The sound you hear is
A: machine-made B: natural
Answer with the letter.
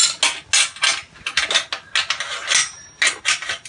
B